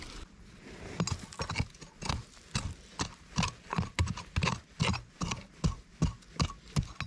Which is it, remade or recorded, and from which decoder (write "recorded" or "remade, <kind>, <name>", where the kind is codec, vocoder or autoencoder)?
recorded